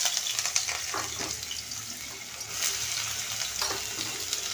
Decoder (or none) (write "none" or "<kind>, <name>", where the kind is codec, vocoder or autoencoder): none